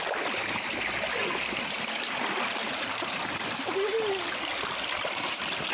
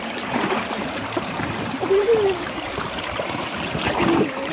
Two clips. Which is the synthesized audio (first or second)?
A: second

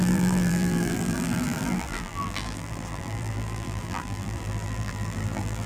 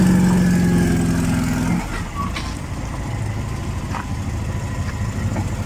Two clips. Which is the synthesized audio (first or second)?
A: first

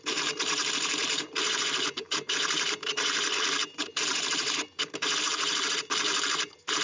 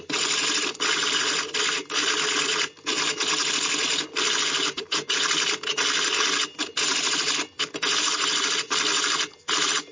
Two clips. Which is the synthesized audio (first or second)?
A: first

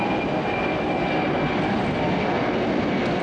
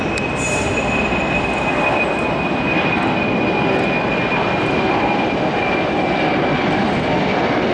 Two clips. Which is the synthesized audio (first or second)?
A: second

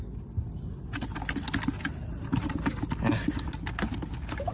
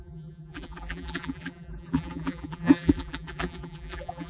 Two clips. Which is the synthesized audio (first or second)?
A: second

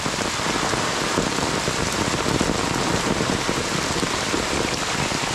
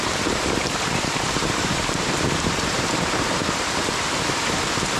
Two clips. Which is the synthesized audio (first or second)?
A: second